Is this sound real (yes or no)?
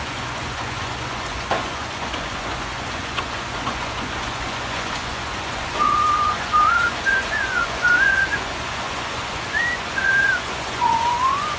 no